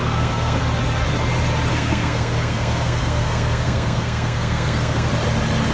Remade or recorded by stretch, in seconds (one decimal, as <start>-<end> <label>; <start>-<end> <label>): 0.0-0.6 remade; 0.6-1.7 recorded; 1.7-5.1 remade; 5.1-5.7 recorded